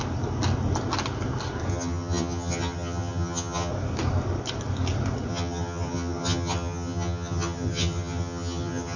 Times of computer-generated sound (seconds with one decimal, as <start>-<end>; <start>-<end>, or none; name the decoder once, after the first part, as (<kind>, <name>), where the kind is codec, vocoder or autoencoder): 1.7-3.7 (vocoder, HiFi-GAN); 5.3-9.0